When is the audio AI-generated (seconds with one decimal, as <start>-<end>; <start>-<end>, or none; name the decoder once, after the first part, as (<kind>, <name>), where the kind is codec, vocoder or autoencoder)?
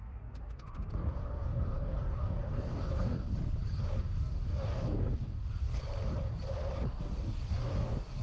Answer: 0.0-3.3 (codec, DAC); 4.0-5.7; 7.0-8.2